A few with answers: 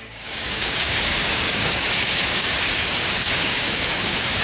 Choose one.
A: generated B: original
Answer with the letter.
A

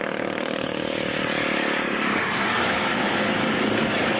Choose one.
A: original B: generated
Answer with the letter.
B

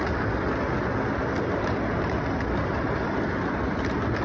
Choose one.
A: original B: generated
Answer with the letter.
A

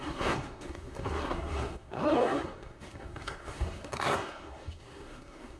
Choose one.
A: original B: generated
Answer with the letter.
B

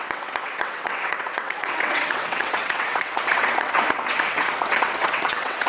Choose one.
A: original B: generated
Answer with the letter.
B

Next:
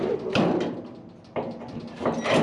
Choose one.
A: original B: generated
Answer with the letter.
A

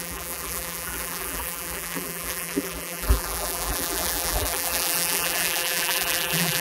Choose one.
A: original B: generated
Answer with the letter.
B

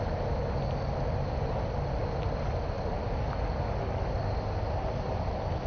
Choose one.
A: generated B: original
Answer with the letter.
B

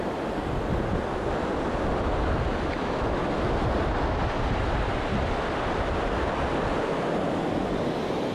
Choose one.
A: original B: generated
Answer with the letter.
A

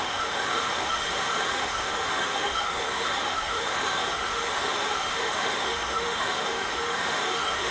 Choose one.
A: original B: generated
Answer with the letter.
B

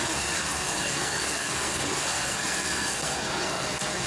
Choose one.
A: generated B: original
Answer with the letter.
A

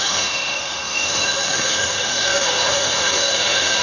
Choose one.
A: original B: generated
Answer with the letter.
B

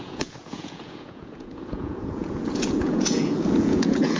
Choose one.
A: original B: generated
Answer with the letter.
B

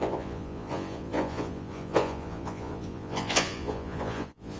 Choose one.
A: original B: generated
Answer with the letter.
B